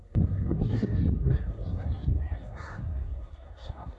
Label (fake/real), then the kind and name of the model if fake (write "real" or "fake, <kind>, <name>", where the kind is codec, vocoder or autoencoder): fake, codec, SNAC